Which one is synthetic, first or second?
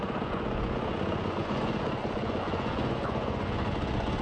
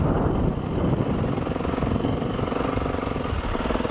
first